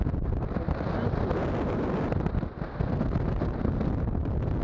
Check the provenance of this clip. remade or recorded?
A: recorded